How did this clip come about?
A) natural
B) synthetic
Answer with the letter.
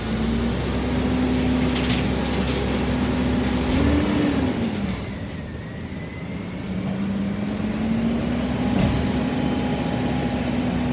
A